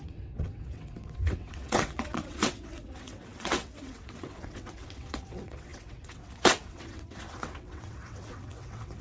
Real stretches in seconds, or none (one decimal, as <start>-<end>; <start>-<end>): none